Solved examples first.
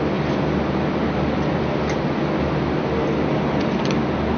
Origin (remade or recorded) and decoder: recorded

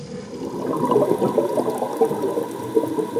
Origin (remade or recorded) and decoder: recorded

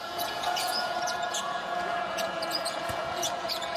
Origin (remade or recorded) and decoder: remade, vocoder, Vocos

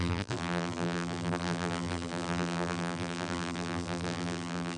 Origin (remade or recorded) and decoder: remade, vocoder, BigVGAN v2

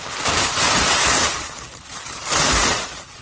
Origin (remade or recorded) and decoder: remade, vocoder, BigVGAN v2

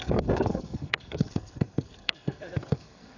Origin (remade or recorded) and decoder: remade, codec, SNAC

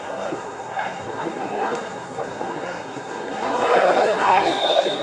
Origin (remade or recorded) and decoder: remade, codec, SNAC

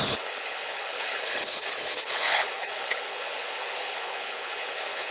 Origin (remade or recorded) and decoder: remade, codec, HILCodec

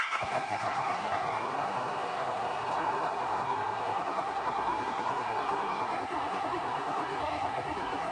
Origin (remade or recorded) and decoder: remade, codec, SNAC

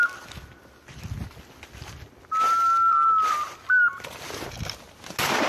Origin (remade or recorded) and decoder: recorded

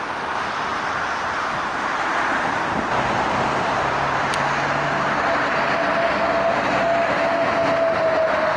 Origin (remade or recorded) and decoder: recorded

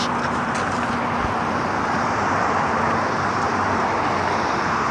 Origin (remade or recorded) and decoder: recorded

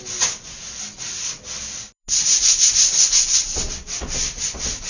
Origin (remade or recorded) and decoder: recorded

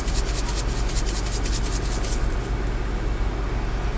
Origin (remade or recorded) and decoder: recorded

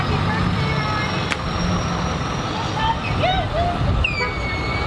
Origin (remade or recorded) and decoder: recorded